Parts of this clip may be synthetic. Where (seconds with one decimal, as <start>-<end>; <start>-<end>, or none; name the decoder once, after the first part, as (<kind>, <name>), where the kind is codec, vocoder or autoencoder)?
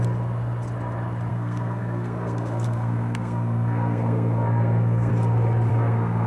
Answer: 1.3-5.1 (codec, SNAC); 5.7-6.3